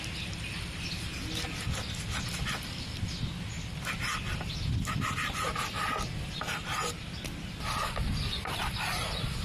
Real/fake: real